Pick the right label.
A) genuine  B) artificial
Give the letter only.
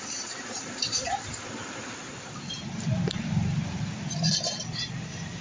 B